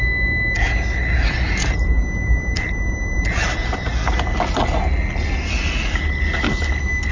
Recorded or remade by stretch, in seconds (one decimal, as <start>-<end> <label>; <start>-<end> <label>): 0.0-1.0 recorded; 1.0-3.2 remade; 3.2-7.1 recorded